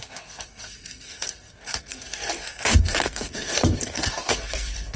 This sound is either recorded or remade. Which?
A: remade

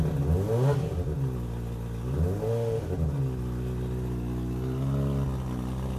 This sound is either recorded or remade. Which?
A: recorded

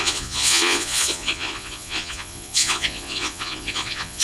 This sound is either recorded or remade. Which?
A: remade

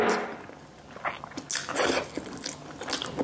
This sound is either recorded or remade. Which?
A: recorded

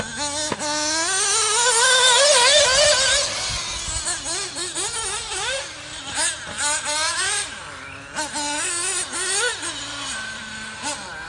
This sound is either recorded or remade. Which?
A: recorded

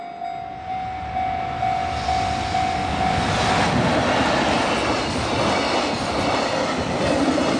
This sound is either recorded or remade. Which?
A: recorded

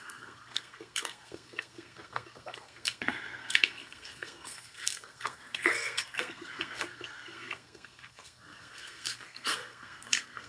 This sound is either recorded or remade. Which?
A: remade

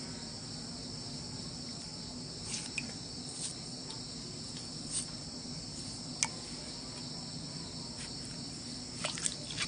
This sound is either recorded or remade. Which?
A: recorded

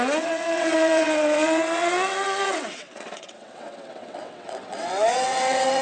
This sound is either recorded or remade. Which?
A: remade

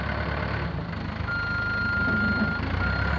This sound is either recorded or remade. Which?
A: recorded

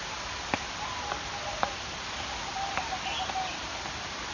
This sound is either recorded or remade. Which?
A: recorded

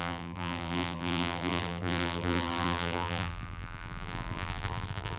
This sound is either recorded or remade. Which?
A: remade